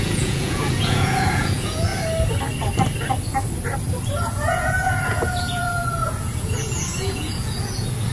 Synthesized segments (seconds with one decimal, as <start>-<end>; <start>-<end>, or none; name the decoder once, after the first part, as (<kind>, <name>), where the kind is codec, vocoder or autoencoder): 0.0-1.9 (vocoder, Vocos); 4.2-8.1